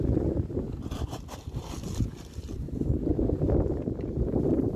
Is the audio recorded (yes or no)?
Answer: yes